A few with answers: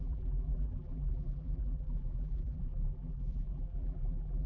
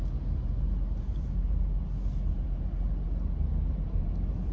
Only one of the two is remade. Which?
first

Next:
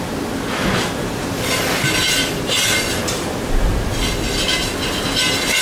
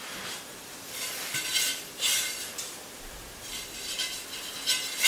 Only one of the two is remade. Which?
second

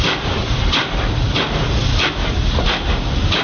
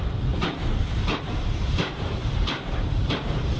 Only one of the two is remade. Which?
second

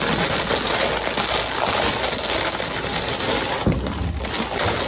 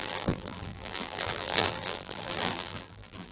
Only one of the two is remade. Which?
second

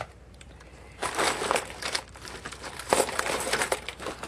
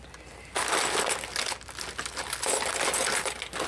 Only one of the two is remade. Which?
first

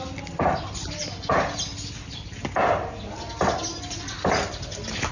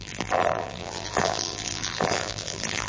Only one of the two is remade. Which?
second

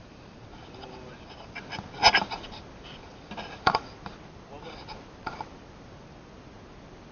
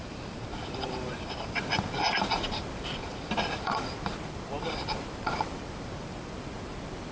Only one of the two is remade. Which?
second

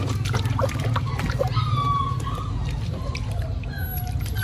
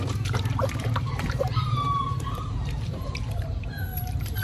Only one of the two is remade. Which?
second